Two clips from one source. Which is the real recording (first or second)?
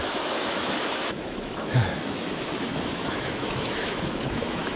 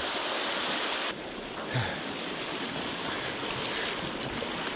second